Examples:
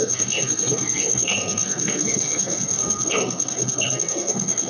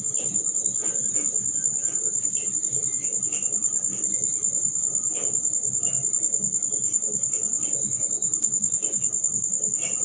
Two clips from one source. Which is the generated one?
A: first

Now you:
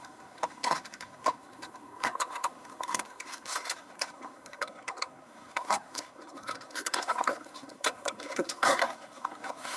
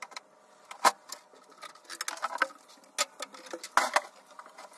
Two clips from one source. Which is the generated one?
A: first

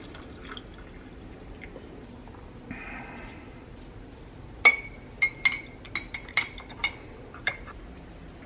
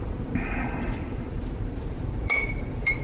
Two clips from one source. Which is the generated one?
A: second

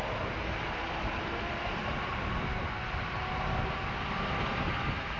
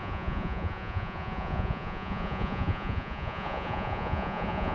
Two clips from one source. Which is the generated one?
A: second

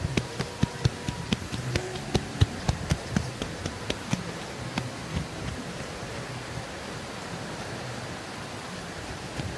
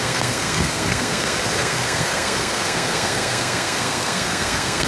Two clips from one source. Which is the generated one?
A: second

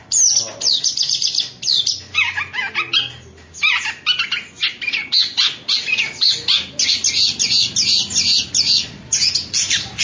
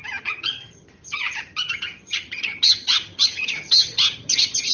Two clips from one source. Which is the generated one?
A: second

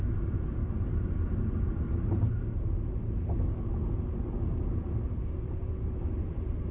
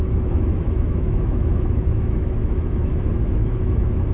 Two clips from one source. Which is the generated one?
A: second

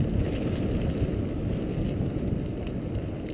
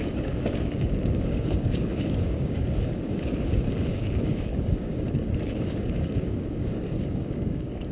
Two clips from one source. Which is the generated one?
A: second